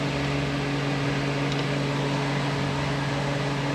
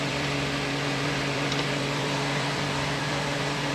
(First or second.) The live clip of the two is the first